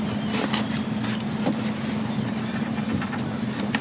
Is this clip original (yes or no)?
yes